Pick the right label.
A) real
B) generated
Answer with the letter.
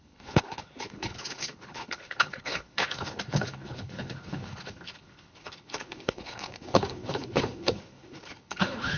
B